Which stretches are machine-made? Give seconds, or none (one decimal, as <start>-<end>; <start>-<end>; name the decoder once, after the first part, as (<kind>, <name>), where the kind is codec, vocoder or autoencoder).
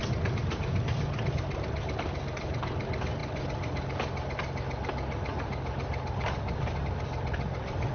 none